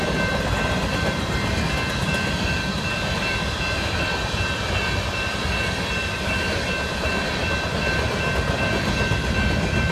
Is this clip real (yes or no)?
yes